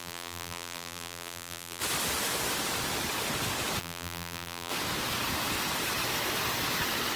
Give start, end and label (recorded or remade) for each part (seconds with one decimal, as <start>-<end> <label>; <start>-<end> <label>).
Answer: 0.0-1.8 remade; 1.8-3.8 recorded; 3.8-4.7 remade; 4.7-7.2 recorded